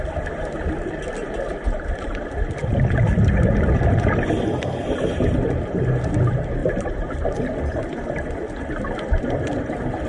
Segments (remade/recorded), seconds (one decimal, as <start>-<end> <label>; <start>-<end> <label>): 0.0-6.6 recorded; 6.6-7.1 remade; 7.1-10.1 recorded